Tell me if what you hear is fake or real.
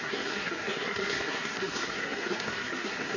fake